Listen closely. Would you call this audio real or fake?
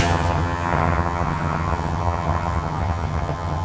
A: fake